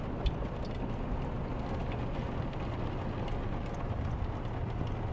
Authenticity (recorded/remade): recorded